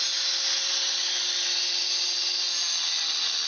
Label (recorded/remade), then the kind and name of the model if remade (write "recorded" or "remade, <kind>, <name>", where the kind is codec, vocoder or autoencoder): recorded